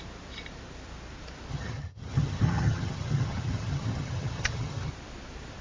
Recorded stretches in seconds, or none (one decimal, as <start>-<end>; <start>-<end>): 0.0-1.5; 4.9-5.6